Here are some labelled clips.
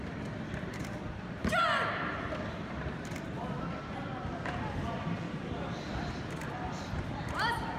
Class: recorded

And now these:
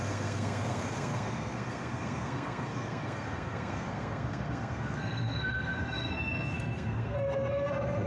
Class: remade